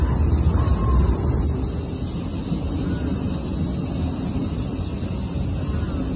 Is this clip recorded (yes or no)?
yes